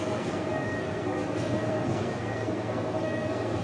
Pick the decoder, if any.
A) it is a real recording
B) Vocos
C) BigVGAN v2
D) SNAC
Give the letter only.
D